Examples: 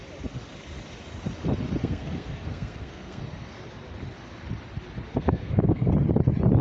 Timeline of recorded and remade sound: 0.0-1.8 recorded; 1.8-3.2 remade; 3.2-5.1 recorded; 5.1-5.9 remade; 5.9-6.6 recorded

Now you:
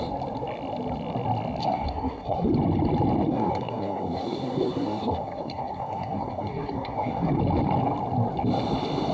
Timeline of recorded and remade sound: 0.0-1.6 recorded; 1.6-2.5 remade; 2.5-3.3 recorded; 3.3-7.4 remade; 7.4-9.1 recorded

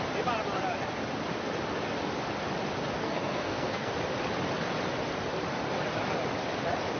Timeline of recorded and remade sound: 0.0-3.0 recorded; 3.0-3.9 remade; 3.9-7.0 recorded